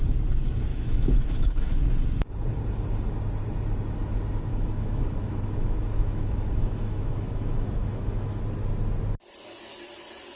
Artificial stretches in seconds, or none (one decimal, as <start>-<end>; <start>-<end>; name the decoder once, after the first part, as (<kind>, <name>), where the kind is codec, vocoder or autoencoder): 0.7-1.8 (autoencoder, DAC-VAE); 4.5-8.4

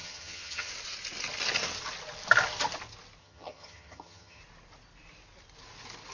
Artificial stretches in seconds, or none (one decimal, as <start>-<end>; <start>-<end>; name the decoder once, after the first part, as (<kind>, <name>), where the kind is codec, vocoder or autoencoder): 0.0-0.7 (vocoder, HiFi-GAN); 3.2-4.4

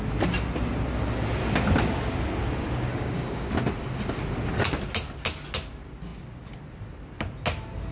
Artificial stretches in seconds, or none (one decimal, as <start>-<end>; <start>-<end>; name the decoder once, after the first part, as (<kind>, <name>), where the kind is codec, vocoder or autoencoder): 2.9-3.5 (codec, DAC)

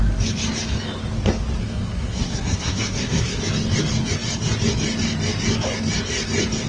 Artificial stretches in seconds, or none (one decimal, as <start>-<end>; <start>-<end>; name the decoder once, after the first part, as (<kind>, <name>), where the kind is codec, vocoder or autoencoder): 1.6-3.4 (codec, SNAC)

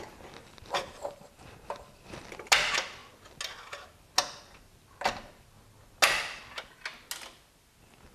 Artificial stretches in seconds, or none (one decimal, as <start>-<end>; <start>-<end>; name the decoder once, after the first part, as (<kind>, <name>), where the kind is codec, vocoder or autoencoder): none

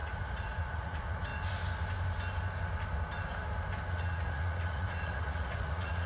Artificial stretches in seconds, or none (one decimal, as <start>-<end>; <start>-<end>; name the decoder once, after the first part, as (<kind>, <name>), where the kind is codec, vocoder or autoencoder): 0.0-1.3 (vocoder, Vocos); 3.9-6.1